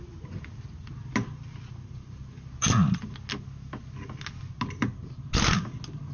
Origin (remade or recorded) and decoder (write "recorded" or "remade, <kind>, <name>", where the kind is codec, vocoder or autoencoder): recorded